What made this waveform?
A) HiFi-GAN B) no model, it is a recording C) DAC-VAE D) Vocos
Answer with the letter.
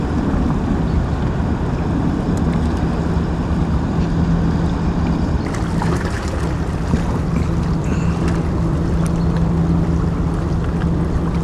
B